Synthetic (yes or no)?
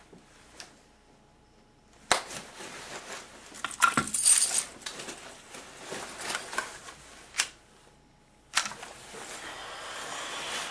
no